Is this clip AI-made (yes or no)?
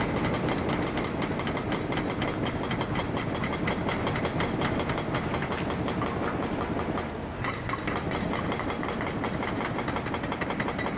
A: no